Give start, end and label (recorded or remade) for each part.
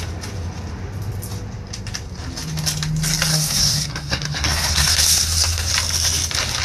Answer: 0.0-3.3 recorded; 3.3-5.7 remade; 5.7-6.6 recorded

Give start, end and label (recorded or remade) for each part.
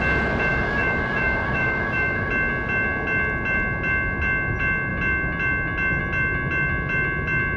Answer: 0.0-0.5 recorded; 0.5-2.3 remade; 2.3-7.6 recorded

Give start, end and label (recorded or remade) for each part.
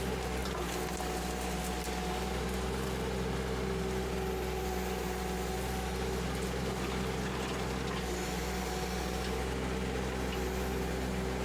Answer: 0.0-11.4 recorded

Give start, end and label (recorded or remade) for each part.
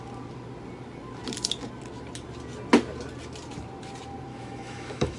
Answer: 0.0-4.3 recorded; 4.3-5.2 remade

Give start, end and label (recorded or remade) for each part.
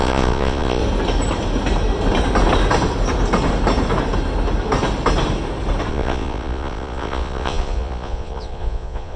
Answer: 0.0-0.8 remade; 0.8-5.9 recorded; 5.9-9.2 remade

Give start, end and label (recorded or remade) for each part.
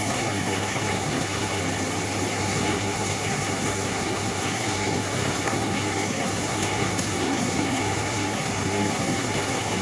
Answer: 0.0-1.6 remade; 1.6-2.3 recorded; 2.3-9.8 remade